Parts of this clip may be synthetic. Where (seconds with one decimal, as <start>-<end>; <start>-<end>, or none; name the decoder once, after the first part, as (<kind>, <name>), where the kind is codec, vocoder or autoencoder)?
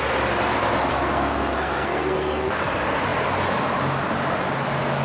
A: 0.9-2.6 (codec, SNAC)